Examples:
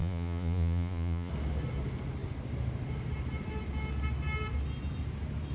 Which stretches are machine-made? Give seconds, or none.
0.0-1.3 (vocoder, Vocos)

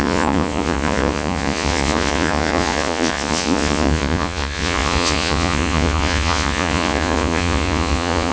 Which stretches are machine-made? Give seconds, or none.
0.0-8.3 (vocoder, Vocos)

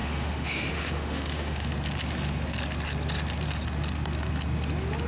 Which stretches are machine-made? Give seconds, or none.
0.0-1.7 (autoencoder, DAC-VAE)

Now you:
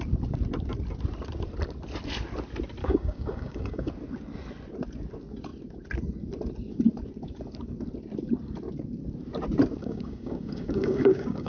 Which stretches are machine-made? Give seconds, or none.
2.8-3.9 (codec, DAC); 9.8-11.5

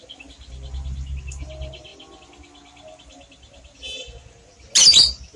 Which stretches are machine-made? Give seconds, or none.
none

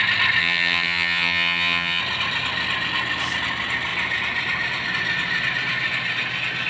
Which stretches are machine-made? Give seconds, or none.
0.4-2.0 (vocoder, HiFi-GAN)